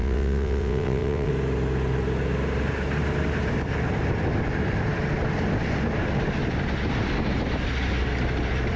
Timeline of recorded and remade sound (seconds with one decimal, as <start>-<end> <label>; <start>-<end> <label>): 0.0-1.3 remade; 1.3-8.8 recorded